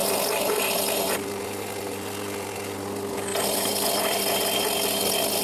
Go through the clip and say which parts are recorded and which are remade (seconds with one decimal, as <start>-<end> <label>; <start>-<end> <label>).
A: 0.0-5.4 recorded